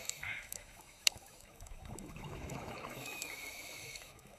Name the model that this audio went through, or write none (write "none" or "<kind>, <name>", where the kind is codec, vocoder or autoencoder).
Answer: autoencoder, DAC-VAE